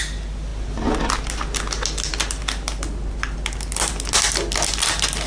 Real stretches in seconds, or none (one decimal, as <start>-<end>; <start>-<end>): 0.0-5.3